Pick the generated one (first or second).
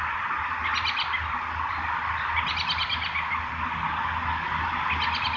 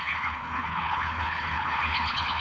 second